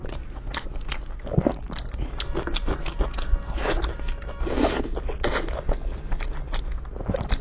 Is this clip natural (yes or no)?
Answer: yes